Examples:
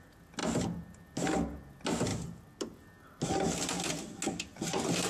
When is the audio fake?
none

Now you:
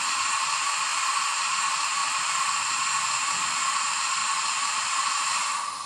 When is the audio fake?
0.9-1.6 (vocoder, BigVGAN v2); 2.0-2.5; 4.2-4.9